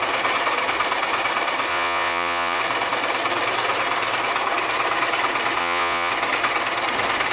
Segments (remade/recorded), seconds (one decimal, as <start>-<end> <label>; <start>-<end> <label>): 0.0-1.7 recorded; 1.7-2.6 remade; 2.6-5.6 recorded; 5.6-6.1 remade; 6.1-7.3 recorded